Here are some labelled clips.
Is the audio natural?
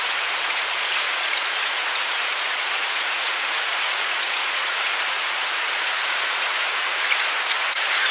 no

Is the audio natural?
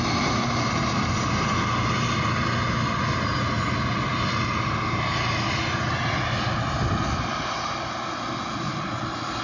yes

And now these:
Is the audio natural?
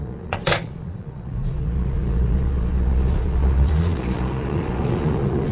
no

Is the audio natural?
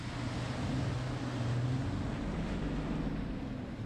yes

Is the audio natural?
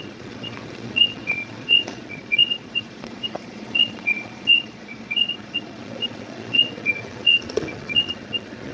no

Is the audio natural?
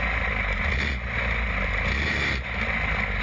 yes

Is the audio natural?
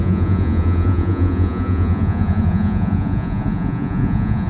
no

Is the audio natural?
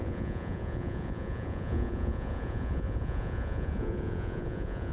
no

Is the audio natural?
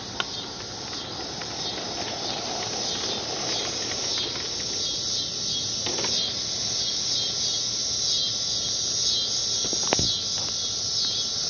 yes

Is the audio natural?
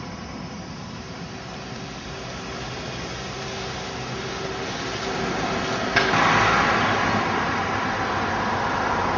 yes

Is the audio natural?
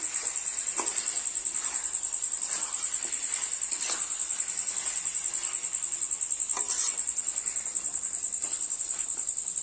yes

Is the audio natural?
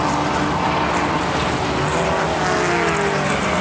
yes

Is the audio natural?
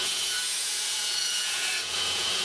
no